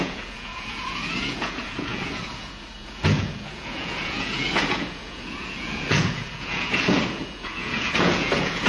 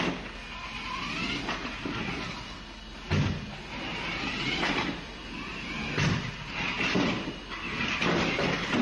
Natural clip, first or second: second